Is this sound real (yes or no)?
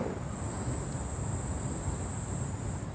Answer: yes